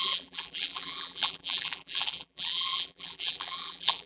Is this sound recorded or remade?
remade